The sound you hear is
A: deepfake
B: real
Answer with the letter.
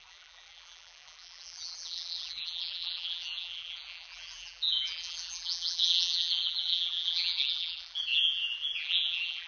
A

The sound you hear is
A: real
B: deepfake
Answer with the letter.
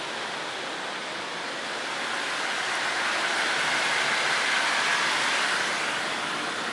A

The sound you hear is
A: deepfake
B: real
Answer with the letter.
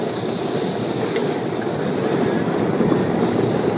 A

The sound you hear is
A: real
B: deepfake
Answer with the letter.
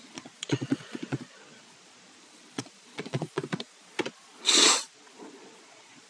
B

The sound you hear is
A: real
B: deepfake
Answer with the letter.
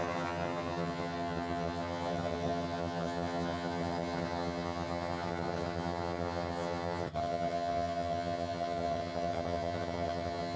B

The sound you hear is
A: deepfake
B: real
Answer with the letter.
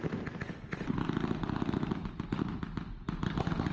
B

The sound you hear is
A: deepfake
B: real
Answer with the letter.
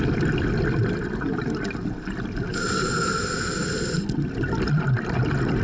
B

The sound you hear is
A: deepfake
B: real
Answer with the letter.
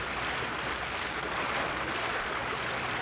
B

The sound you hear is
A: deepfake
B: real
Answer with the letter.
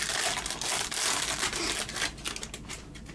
B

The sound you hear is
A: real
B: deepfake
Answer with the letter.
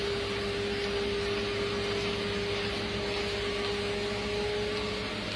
A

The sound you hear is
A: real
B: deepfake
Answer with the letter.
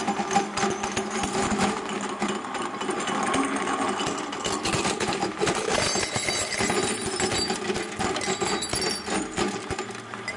A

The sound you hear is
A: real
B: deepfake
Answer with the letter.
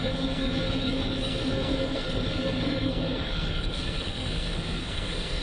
B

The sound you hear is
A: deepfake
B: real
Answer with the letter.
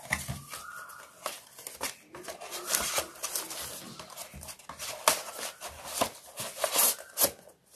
B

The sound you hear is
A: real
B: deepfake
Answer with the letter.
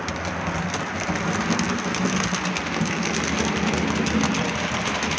A